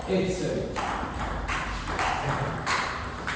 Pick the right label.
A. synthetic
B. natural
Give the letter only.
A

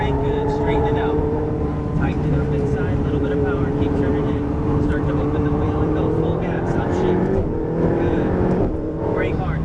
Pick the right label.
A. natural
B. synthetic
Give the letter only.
B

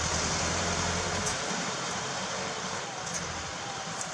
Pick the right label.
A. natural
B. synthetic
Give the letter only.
B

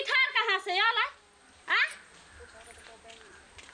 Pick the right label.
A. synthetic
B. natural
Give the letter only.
B